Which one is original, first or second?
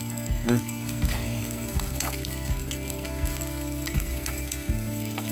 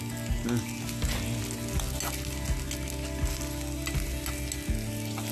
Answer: second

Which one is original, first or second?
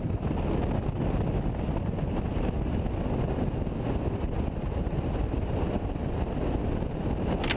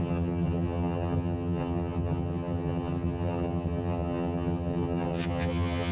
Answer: first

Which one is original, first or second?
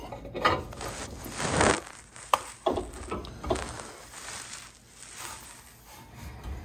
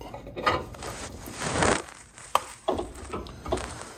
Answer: first